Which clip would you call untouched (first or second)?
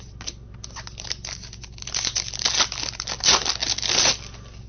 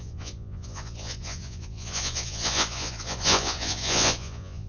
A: first